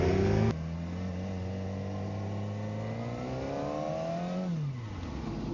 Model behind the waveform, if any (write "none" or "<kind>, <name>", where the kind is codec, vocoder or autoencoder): none